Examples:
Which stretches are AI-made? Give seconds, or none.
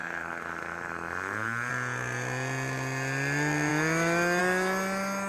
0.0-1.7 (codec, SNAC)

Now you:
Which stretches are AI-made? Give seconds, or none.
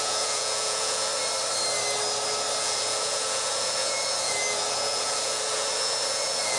0.0-1.1 (vocoder, Vocos); 2.6-6.6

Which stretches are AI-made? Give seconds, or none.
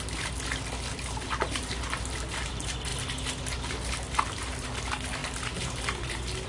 none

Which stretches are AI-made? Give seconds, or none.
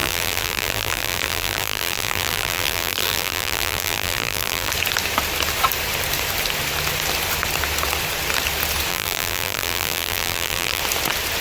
0.0-4.7 (vocoder, BigVGAN v2); 8.9-10.8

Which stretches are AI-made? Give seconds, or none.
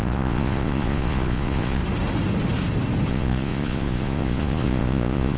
0.0-1.8 (vocoder, Vocos); 3.1-5.4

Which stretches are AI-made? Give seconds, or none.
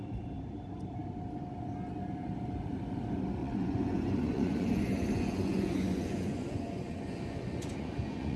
3.4-8.4 (vocoder, Vocos)